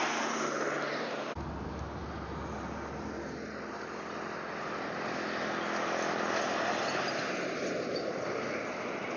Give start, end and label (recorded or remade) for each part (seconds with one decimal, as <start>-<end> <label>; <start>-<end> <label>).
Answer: 0.0-9.2 recorded